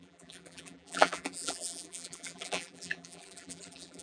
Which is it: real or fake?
fake